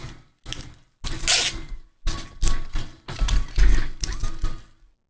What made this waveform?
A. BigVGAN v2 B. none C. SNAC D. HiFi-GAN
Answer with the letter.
B